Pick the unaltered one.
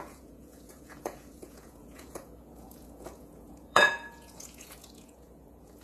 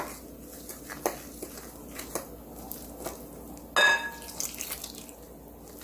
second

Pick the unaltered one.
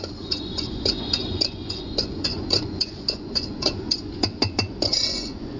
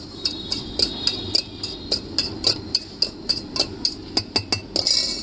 second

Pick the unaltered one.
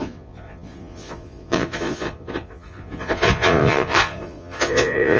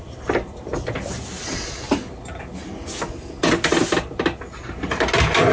second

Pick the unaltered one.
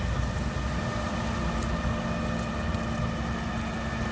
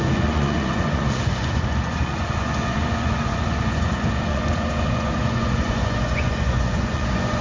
first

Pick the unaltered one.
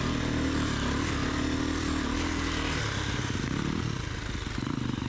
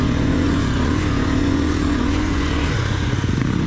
first